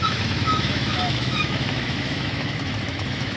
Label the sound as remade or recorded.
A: remade